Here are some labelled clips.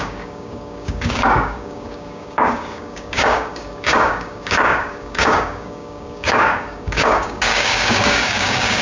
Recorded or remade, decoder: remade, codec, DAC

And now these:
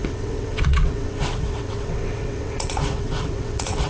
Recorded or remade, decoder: remade, vocoder, WaveNeXt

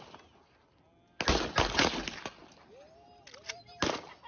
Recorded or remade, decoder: recorded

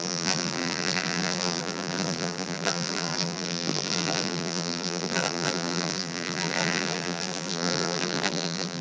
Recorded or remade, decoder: remade, vocoder, BigVGAN v2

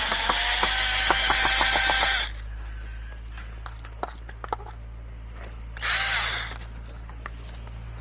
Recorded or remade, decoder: recorded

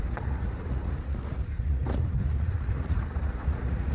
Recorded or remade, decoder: remade, vocoder, Vocos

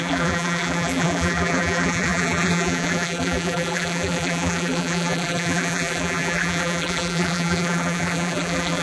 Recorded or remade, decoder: remade, vocoder, BigVGAN v2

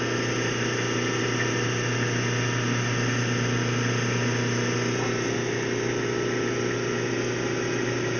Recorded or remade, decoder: recorded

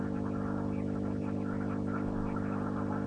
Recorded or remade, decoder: recorded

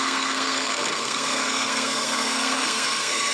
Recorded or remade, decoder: remade, codec, SNAC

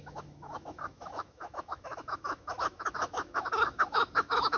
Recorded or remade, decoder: remade, autoencoder, DAC-VAE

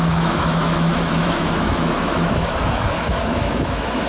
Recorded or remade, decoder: remade, autoencoder, DAC-VAE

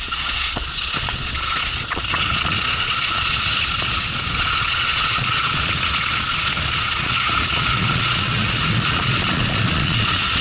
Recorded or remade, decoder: remade, vocoder, Vocos